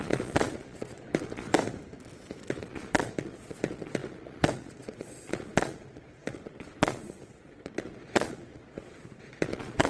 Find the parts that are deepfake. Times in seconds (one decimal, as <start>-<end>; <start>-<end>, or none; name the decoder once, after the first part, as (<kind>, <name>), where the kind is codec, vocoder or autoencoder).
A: 0.0-1.5 (vocoder, Vocos); 2.5-9.9